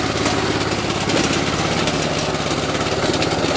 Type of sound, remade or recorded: recorded